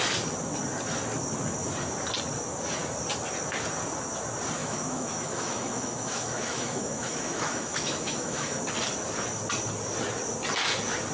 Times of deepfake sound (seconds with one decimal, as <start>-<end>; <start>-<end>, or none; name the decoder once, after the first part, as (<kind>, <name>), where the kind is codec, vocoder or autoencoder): 4.6-8.6 (autoencoder, DAC-VAE)